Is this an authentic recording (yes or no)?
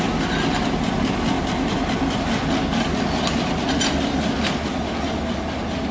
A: yes